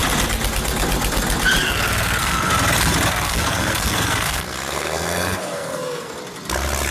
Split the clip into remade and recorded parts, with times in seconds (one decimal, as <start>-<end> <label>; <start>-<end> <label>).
0.0-1.6 recorded; 1.6-2.5 remade; 2.5-3.1 recorded; 3.1-6.1 remade; 6.1-6.9 recorded